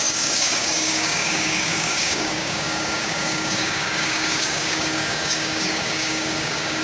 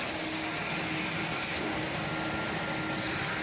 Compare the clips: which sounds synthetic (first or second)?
first